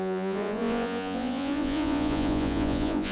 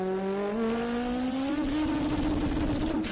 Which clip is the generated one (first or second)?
first